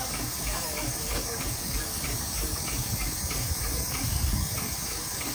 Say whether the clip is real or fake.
fake